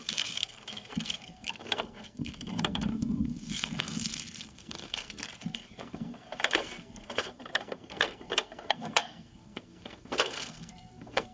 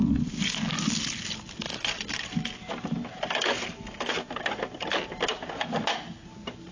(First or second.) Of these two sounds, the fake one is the first